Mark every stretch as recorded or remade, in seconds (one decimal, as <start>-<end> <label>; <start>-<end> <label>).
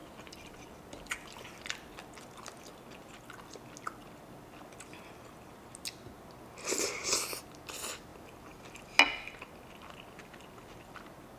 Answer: 0.0-11.4 recorded